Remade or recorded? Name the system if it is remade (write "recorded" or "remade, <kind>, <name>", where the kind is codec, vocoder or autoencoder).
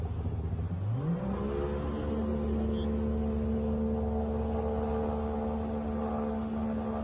recorded